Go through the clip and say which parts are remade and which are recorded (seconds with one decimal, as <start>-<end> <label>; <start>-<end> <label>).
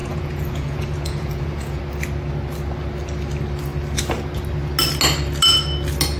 0.0-1.8 remade; 1.8-6.2 recorded